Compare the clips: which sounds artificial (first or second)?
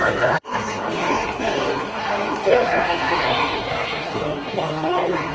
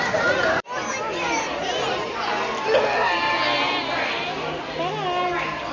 first